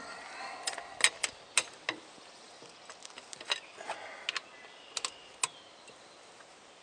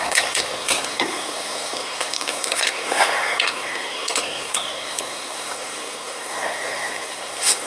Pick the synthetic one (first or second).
second